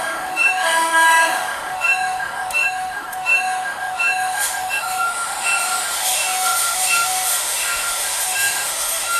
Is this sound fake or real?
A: fake